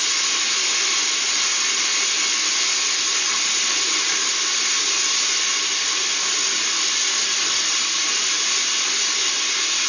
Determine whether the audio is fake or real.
real